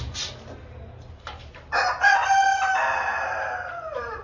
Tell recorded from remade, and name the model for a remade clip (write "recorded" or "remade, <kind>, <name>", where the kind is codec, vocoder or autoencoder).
recorded